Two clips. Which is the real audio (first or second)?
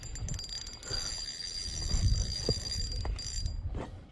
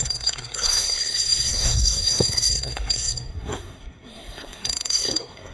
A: first